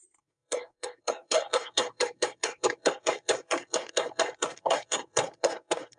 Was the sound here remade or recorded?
remade